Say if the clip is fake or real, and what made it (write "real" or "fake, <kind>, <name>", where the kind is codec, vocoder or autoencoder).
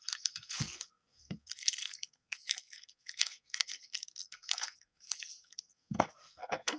fake, codec, SNAC